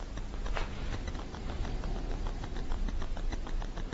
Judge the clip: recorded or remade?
recorded